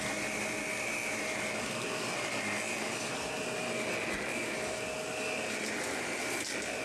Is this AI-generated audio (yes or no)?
no